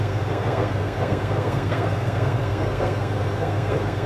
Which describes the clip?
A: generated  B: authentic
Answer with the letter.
A